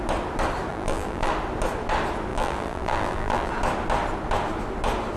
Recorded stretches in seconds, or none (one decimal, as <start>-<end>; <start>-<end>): 0.0-0.7; 1.3-2.3; 3.5-5.2

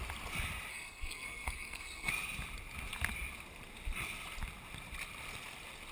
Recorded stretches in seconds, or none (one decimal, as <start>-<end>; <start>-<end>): 0.0-0.7; 2.1-5.9

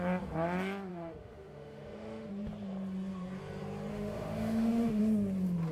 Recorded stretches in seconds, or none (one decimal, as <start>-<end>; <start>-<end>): 0.0-0.9; 2.3-3.9; 5.0-5.7

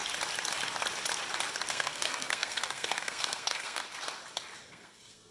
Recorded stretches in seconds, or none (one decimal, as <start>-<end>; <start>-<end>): 0.0-1.7; 3.8-4.7

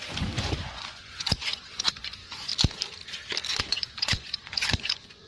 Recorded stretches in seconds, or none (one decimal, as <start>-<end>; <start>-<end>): 2.5-3.6